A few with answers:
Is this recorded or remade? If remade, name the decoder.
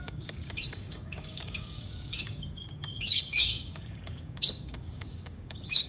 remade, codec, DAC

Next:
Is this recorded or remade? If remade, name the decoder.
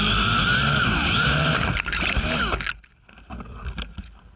recorded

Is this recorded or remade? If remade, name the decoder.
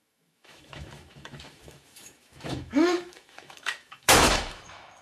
remade, autoencoder, DAC-VAE